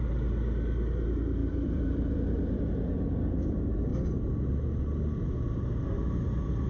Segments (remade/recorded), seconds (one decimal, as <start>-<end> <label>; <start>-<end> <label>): 0.0-1.4 recorded; 1.4-2.6 remade; 2.6-6.7 recorded

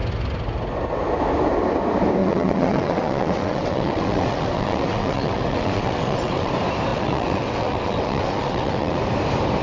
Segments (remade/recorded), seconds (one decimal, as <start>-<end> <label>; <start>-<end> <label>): 0.0-2.2 recorded; 2.2-6.5 remade; 6.5-6.9 recorded; 6.9-9.0 remade; 9.0-9.6 recorded

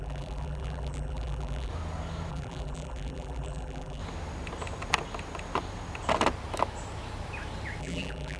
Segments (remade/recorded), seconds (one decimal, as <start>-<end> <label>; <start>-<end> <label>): 0.0-1.7 remade; 1.7-2.3 recorded; 2.3-4.0 remade; 4.0-7.8 recorded; 7.8-8.4 remade